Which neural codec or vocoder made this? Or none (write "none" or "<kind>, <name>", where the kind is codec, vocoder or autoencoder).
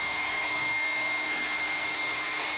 codec, SNAC